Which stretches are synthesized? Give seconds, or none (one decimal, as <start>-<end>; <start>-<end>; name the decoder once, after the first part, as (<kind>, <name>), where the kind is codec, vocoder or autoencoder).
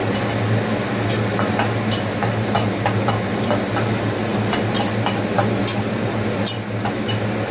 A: none